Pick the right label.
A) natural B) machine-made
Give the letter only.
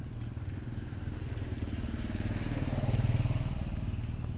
A